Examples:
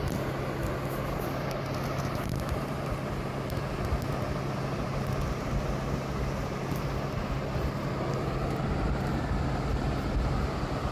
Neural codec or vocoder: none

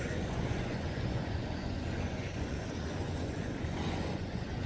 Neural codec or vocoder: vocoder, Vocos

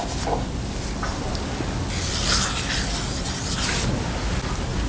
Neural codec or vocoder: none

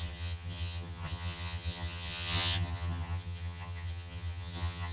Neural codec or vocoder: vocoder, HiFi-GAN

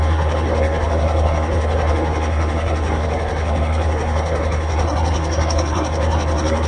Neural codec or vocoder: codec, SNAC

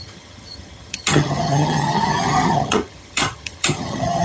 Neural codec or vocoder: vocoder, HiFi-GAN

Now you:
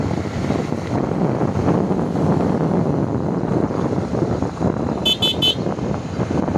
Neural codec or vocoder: none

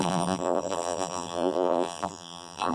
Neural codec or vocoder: vocoder, BigVGAN v2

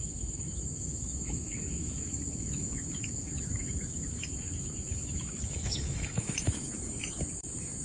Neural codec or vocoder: autoencoder, DAC-VAE